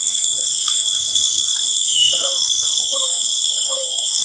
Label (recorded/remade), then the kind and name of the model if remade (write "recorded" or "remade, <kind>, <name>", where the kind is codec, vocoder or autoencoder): remade, codec, SNAC